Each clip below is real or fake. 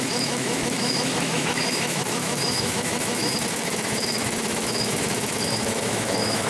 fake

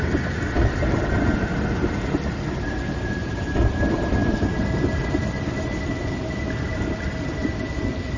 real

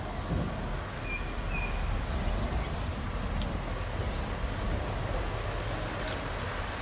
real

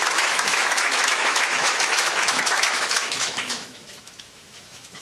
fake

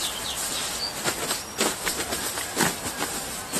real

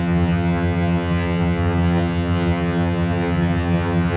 fake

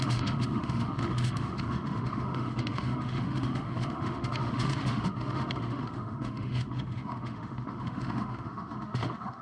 fake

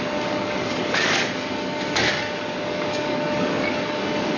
fake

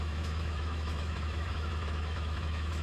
fake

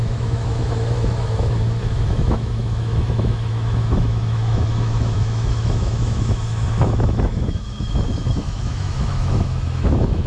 fake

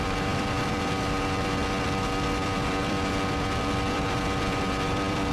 fake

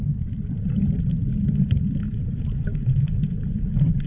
real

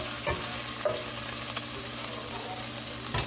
real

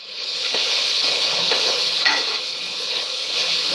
fake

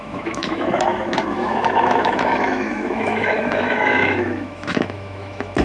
fake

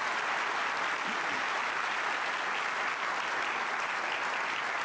real